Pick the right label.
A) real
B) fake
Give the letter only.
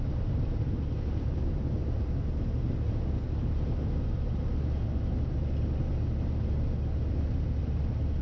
A